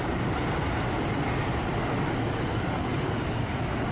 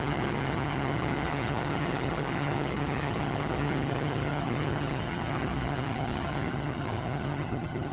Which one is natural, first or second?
first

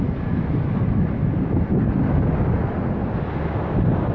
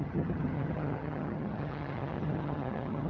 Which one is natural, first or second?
first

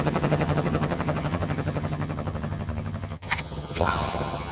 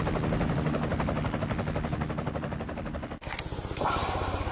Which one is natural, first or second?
second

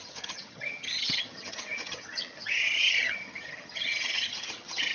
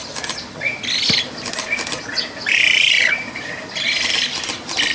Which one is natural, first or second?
second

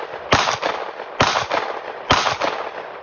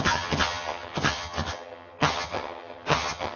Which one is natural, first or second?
first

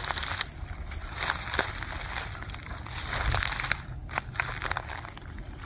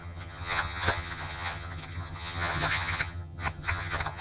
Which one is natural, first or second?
first